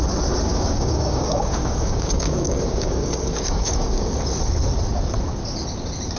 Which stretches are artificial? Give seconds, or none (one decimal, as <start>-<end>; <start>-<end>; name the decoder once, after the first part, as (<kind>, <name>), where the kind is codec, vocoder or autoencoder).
0.5-4.2 (codec, DAC)

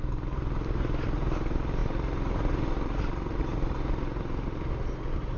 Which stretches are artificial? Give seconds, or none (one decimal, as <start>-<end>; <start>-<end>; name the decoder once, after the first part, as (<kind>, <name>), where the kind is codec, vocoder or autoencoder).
none

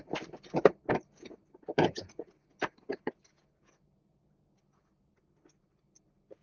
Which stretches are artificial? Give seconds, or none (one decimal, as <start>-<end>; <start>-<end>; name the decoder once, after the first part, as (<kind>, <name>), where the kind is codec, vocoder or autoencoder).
1.1-4.9 (vocoder, Vocos)

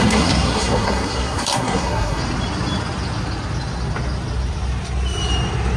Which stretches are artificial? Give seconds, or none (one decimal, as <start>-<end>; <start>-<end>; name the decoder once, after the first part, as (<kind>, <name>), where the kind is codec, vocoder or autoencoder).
0.0-2.2 (codec, SNAC)

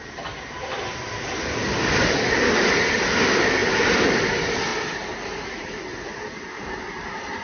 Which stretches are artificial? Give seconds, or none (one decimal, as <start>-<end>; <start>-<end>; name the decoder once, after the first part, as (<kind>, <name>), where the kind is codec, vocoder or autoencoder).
4.7-6.8 (vocoder, BigVGAN v2)

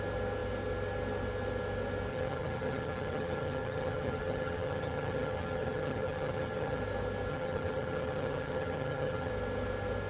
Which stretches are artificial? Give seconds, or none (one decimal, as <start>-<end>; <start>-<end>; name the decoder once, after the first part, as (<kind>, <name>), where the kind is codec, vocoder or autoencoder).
2.1-6.8 (vocoder, HiFi-GAN); 7.3-9.3

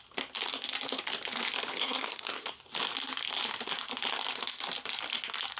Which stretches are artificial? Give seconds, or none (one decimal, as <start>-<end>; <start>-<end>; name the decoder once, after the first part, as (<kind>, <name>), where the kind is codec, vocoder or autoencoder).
1.7-2.6 (codec, SNAC)